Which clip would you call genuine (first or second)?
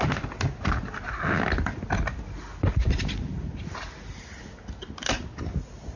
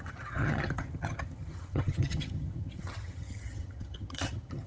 first